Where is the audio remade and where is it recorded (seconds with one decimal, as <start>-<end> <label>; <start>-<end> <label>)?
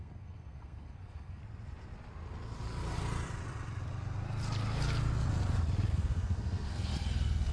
0.0-1.4 remade; 1.4-5.9 recorded; 5.9-6.9 remade; 6.9-7.5 recorded